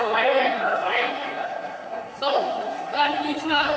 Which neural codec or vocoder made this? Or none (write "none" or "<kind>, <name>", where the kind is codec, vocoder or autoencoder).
codec, SNAC